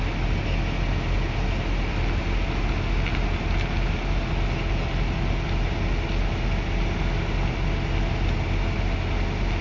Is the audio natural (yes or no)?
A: yes